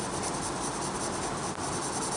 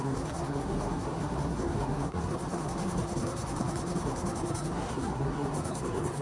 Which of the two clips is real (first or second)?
first